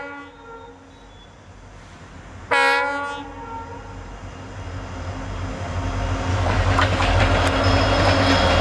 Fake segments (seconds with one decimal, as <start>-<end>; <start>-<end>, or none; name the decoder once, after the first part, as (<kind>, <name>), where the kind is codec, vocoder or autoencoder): 6.3-7.2 (codec, DAC)